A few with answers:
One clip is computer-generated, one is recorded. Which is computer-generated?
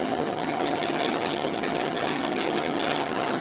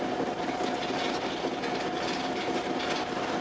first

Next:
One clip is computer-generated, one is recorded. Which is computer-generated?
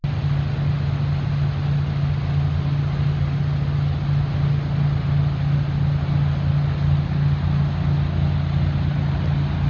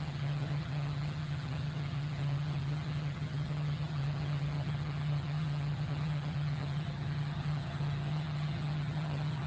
second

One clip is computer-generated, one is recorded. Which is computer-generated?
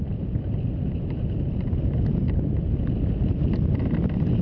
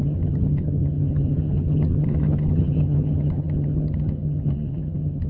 second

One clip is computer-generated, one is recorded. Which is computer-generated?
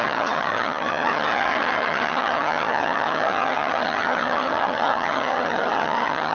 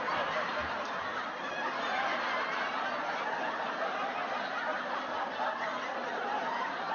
first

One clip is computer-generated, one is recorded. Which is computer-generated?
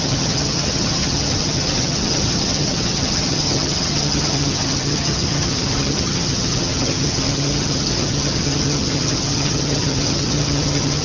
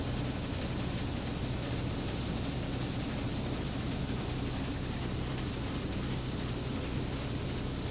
first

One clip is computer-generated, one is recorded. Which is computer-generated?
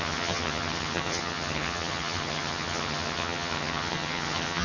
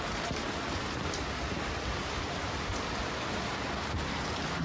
first